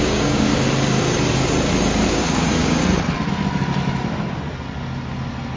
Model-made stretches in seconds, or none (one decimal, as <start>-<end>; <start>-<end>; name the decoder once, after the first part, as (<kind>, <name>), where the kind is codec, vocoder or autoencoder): 0.0-0.5 (codec, DAC); 2.1-2.8